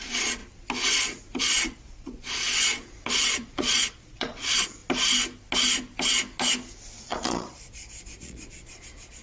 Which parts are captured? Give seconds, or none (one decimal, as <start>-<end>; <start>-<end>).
0.4-1.4; 4.8-7.0